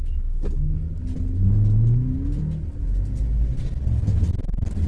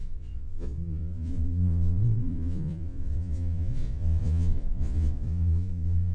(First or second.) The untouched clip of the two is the first